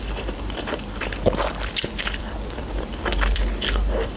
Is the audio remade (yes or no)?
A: yes